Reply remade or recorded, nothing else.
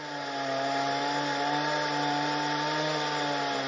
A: recorded